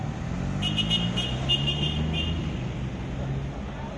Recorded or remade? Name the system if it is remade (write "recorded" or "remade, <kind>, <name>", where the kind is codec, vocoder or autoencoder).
recorded